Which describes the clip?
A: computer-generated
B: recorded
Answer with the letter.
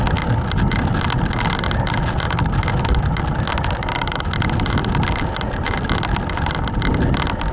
B